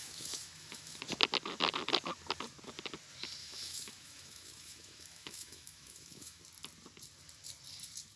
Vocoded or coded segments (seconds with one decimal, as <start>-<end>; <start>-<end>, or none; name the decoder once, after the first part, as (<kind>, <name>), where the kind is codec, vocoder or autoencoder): 0.0-1.0 (autoencoder, DAC-VAE); 3.4-6.4

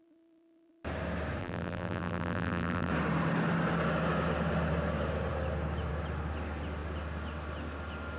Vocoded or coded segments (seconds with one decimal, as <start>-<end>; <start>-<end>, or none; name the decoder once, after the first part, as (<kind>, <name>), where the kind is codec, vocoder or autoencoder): 1.4-2.9 (vocoder, BigVGAN v2)

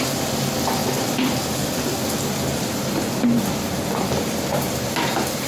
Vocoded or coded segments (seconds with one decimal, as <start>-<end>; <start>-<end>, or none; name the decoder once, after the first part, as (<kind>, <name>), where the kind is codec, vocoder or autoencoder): none

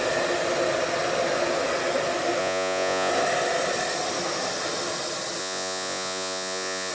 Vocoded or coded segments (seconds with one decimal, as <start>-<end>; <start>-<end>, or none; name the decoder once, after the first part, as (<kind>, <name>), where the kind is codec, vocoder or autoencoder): 2.4-3.1 (vocoder, Vocos); 5.4-6.9

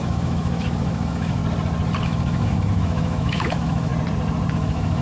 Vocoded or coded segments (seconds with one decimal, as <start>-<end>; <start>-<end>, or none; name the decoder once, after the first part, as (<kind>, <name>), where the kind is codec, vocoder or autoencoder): 0.0-1.4 (autoencoder, DAC-VAE); 2.0-3.9; 4.5-5.0